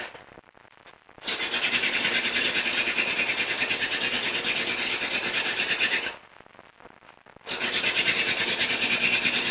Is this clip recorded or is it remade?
recorded